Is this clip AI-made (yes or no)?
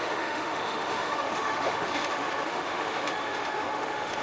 yes